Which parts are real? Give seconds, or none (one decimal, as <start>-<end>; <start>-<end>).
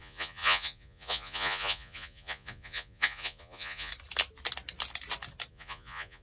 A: 3.9-5.5